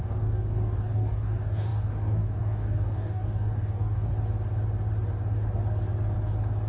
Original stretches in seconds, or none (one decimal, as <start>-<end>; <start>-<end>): 4.1-6.7